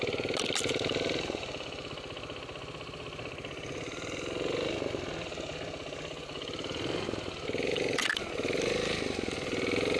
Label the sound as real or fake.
real